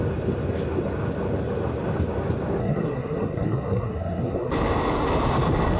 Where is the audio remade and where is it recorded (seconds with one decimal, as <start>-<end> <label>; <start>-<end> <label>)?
0.0-2.6 recorded; 2.6-4.5 remade; 4.5-5.8 recorded